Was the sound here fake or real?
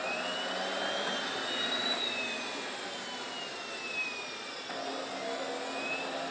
real